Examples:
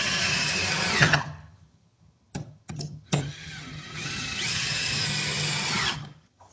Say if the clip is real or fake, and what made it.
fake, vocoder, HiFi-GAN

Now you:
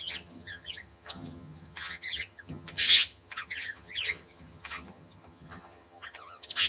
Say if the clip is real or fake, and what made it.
fake, vocoder, HiFi-GAN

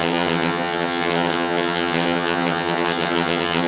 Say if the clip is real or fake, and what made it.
fake, vocoder, HiFi-GAN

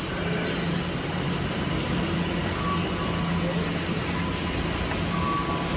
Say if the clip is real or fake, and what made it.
real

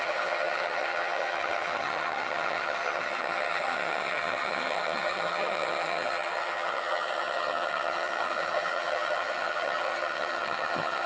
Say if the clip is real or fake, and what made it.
fake, vocoder, HiFi-GAN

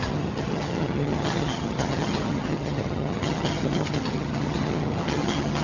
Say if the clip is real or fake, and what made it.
fake, vocoder, HiFi-GAN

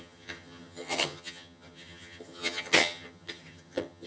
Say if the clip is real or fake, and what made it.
fake, vocoder, HiFi-GAN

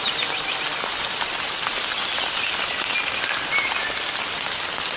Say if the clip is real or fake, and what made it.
real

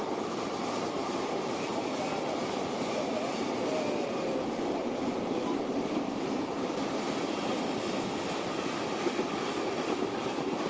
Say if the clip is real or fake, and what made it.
real